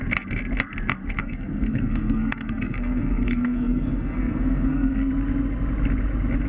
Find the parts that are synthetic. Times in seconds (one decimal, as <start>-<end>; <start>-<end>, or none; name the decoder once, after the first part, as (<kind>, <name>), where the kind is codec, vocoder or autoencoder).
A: 1.2-5.1 (codec, SNAC)